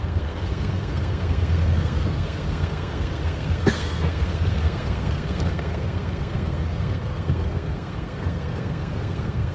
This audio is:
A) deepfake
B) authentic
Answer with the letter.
A